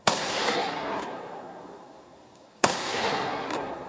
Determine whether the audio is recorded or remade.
remade